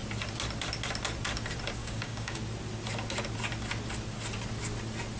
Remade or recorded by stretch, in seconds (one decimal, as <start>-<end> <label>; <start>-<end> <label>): 0.0-1.8 recorded; 1.8-2.4 remade; 2.4-5.2 recorded

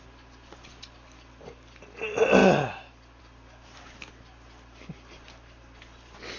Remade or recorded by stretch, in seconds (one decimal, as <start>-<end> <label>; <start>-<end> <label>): 0.0-6.4 recorded

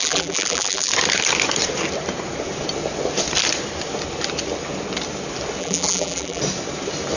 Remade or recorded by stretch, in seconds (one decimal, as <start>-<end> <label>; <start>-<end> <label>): 0.0-0.9 remade; 0.9-5.6 recorded; 5.6-6.4 remade; 6.4-7.2 recorded

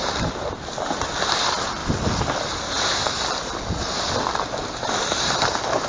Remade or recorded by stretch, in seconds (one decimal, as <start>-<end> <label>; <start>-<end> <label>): 0.0-1.8 remade; 1.8-4.1 recorded; 4.1-5.9 remade

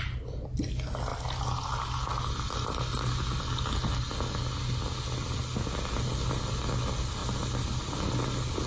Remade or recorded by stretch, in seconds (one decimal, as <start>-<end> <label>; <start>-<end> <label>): 0.0-8.7 recorded